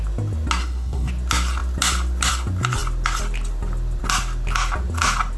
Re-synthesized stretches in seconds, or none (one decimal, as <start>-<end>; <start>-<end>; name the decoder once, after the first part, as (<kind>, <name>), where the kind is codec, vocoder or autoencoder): 0.6-1.1 (codec, SNAC)